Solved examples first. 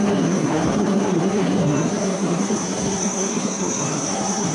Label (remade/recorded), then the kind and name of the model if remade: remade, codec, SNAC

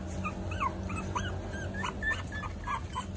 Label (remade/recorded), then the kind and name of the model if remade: recorded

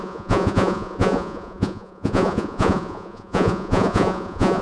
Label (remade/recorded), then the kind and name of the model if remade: remade, vocoder, Vocos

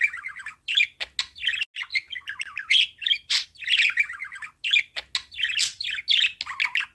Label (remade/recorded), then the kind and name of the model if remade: recorded